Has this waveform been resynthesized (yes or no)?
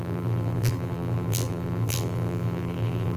yes